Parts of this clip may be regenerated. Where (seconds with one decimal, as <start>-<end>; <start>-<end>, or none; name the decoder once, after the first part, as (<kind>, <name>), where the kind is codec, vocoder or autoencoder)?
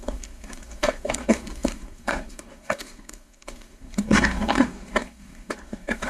0.0-6.1 (codec, SNAC)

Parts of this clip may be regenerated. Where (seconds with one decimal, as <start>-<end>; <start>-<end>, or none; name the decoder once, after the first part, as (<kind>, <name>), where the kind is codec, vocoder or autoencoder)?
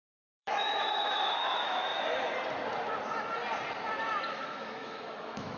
0.0-1.9 (autoencoder, DAC-VAE); 4.3-5.6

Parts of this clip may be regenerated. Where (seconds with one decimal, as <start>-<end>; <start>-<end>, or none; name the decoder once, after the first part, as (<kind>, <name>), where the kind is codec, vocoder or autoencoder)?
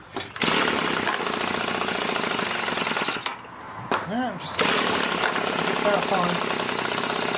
0.6-2.0 (vocoder, BigVGAN v2)